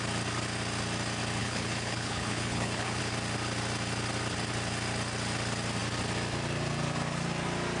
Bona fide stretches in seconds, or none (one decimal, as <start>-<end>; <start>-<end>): 0.0-1.4; 3.0-7.8